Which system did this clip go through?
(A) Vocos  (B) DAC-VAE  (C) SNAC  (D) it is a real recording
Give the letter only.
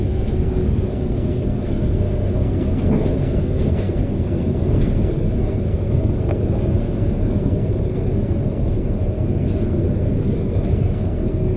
C